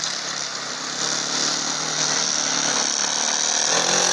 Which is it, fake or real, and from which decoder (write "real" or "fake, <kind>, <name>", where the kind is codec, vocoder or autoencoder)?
real